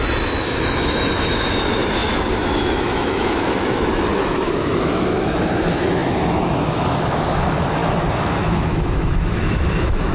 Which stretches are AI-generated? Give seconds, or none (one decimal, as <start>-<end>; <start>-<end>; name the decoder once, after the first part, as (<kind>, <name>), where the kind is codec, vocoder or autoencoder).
0.0-10.1 (autoencoder, DAC-VAE)